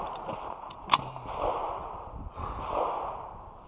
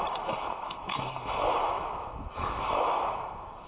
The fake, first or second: second